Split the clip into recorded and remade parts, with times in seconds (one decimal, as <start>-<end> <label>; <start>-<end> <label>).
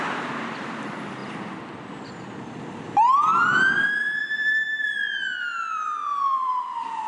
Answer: 0.0-7.1 remade